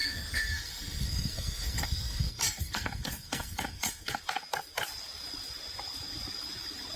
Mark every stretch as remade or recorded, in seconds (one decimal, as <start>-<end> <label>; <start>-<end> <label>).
0.0-4.2 remade; 4.2-7.0 recorded